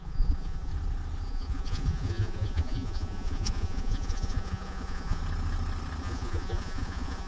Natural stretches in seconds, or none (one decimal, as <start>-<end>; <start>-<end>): 0.7-1.3; 5.2-6.0